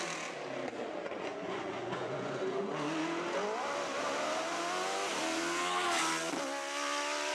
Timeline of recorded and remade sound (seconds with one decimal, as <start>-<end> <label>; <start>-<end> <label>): 0.0-0.8 recorded; 0.8-2.7 remade; 2.7-7.3 recorded